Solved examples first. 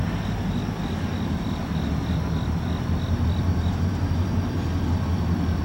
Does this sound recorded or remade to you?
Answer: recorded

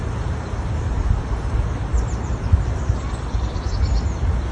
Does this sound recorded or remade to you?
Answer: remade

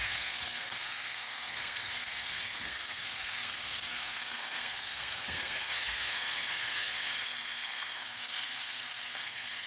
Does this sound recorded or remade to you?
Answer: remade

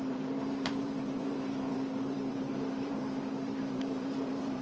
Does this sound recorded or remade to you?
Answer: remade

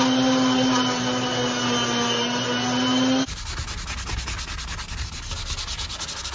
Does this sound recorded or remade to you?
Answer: recorded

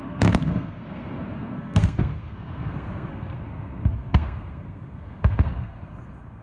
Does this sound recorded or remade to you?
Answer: remade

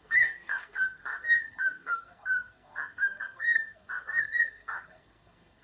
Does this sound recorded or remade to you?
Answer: remade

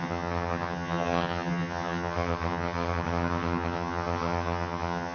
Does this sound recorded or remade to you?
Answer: remade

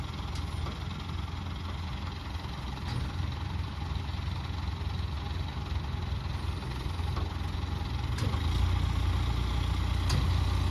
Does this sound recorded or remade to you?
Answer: recorded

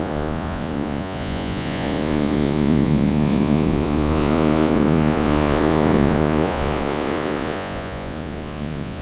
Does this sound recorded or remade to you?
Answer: remade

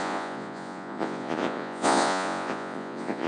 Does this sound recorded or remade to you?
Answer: remade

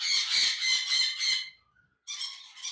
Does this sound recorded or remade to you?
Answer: recorded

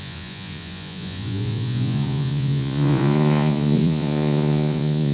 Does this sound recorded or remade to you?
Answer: remade